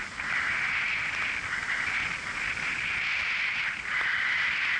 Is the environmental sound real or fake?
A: real